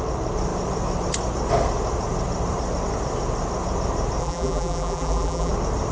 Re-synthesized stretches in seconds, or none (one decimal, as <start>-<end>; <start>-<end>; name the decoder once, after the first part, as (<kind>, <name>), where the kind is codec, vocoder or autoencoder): 4.2-5.5 (vocoder, BigVGAN v2)